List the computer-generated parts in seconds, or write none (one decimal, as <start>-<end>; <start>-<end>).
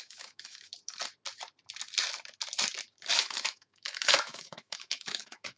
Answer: 0.0-0.7; 3.1-5.6